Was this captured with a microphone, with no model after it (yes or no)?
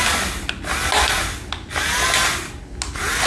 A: yes